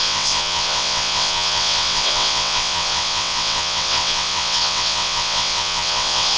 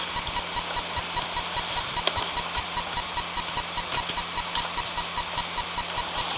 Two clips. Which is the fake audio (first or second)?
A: first